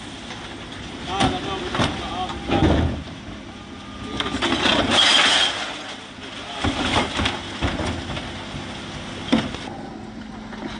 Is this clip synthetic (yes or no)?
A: no